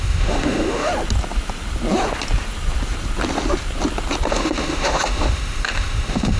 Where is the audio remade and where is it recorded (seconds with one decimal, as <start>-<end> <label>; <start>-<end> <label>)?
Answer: 0.0-0.9 remade; 0.9-4.3 recorded; 4.3-6.4 remade